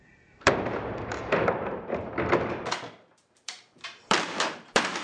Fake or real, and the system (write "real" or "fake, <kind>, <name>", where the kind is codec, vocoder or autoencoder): fake, vocoder, BigVGAN v2